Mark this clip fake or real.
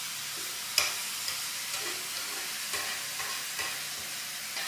real